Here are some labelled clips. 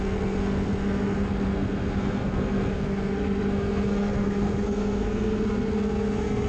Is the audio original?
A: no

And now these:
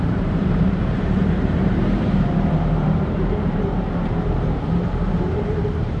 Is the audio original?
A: no